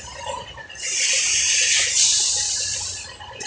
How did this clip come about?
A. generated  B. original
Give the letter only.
B